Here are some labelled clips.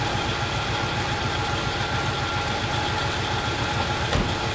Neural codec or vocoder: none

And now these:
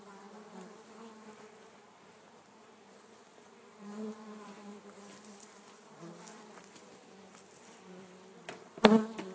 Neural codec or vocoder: vocoder, BigVGAN v2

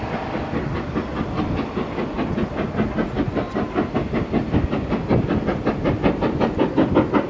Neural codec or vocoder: none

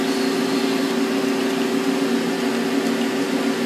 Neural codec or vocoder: none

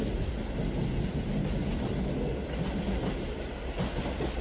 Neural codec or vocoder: none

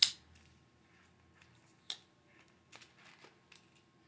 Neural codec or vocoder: none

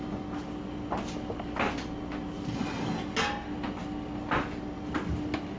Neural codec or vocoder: none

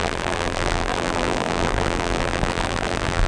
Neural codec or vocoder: vocoder, BigVGAN v2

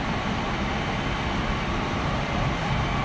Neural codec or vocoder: vocoder, BigVGAN v2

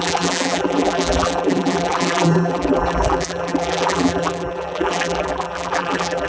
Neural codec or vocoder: vocoder, BigVGAN v2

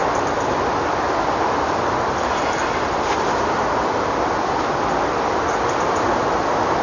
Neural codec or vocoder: vocoder, BigVGAN v2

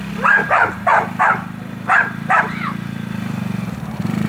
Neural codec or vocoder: vocoder, BigVGAN v2